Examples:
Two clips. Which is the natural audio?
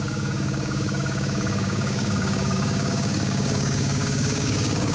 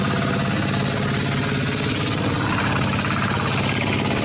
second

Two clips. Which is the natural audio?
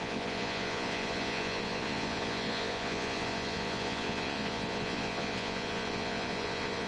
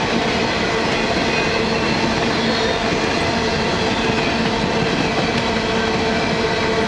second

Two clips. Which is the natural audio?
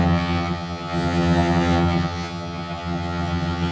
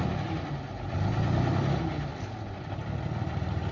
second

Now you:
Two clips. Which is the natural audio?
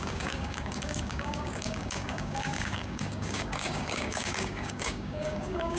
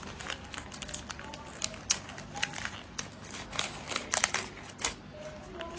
second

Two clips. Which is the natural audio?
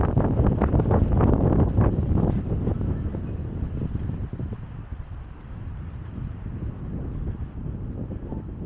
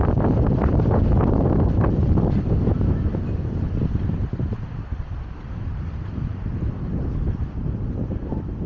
first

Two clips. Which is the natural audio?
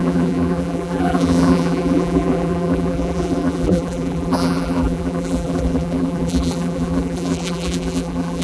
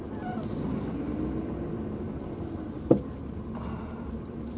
second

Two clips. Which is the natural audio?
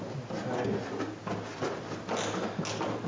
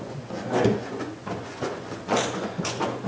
first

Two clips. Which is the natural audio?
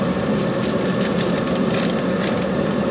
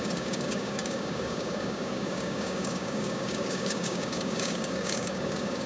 first